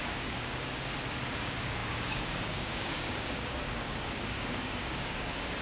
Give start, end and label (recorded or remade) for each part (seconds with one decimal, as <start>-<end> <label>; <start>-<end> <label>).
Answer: 0.0-0.9 remade; 0.9-1.4 recorded; 1.4-5.6 remade